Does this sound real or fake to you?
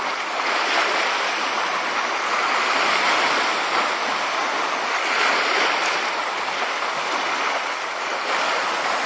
real